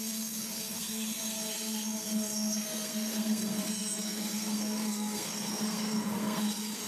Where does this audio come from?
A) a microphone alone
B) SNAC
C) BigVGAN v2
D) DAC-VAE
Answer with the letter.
B